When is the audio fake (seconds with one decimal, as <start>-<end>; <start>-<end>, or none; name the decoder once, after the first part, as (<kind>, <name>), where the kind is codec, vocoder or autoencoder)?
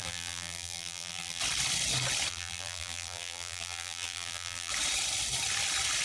0.0-1.4 (vocoder, BigVGAN v2); 2.3-4.7